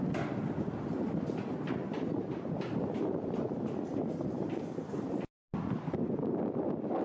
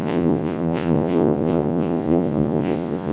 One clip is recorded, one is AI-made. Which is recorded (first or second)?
first